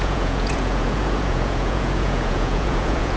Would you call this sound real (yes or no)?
no